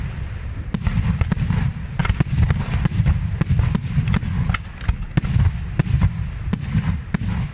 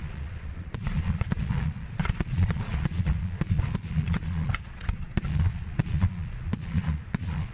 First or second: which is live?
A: first